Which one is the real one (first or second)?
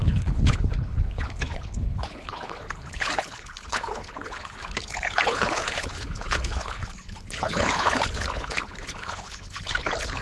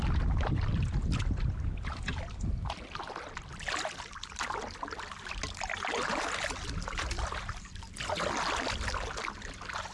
second